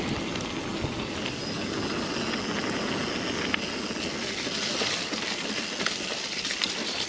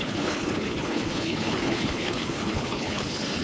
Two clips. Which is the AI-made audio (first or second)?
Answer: second